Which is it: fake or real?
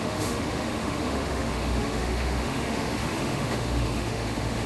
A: fake